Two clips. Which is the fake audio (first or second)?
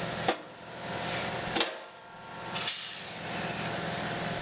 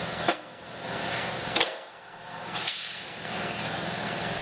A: second